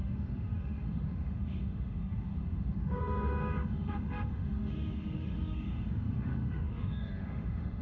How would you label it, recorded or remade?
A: remade